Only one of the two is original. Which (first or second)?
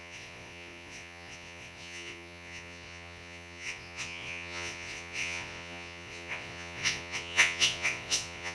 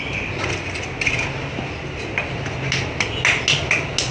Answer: second